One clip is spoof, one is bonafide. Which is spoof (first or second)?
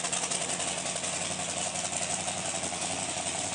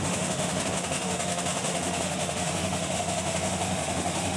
second